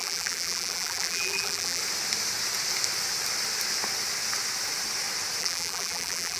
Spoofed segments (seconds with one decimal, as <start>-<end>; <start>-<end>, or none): 0.0-1.8; 5.4-6.4